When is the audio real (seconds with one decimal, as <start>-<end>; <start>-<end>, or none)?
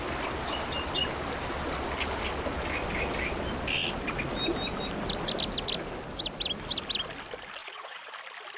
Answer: 0.0-7.6; 8.1-8.6